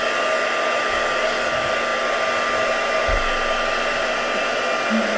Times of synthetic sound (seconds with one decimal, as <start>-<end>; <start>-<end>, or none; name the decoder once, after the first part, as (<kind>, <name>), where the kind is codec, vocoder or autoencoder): none